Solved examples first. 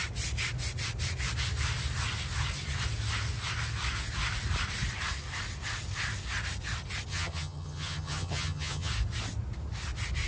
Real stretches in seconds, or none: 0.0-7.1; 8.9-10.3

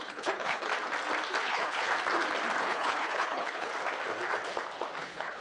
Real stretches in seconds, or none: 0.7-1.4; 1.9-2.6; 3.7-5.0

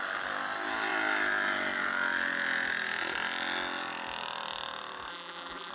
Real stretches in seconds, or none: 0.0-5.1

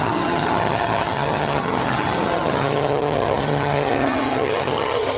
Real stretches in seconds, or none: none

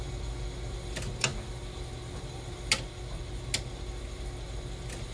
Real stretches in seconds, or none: 0.0-5.1

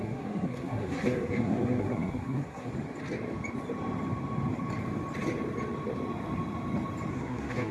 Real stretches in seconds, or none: 2.7-7.1